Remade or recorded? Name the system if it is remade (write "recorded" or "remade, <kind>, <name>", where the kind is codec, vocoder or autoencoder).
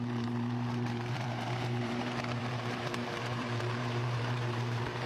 remade, vocoder, BigVGAN v2